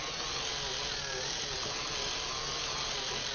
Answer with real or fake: real